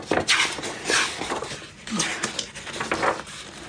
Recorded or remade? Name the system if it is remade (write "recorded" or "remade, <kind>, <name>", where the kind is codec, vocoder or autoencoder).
recorded